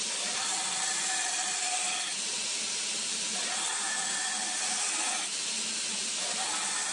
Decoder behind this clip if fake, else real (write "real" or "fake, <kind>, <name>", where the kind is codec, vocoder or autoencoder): real